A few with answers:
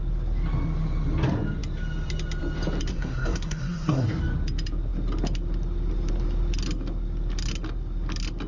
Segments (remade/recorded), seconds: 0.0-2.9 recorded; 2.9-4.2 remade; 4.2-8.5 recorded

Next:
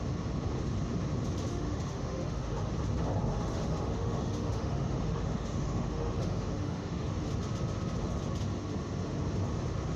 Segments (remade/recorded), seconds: 0.0-1.5 recorded; 1.5-2.7 remade; 2.7-3.3 recorded; 3.3-7.3 remade; 7.3-10.0 recorded

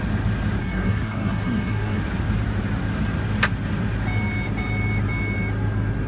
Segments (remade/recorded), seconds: 0.0-0.6 recorded; 0.6-2.0 remade; 2.0-6.1 recorded